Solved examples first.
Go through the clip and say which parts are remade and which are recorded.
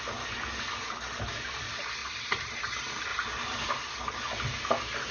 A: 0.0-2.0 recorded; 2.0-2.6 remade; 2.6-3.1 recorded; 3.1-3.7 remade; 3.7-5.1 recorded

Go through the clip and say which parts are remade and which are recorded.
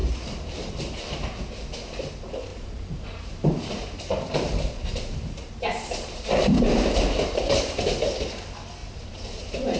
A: 0.0-1.4 remade; 1.4-2.5 recorded; 2.5-7.6 remade; 7.6-8.8 recorded; 8.8-9.8 remade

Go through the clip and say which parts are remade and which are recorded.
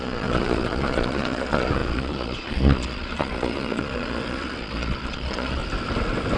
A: 0.0-5.6 remade; 5.6-6.4 recorded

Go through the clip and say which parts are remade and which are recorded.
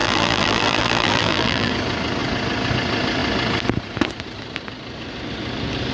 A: 0.0-1.7 remade; 1.7-5.9 recorded